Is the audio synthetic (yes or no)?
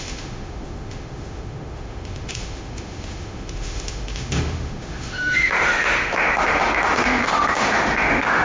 yes